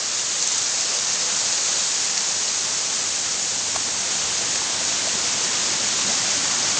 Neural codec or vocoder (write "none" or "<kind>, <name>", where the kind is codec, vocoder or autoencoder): none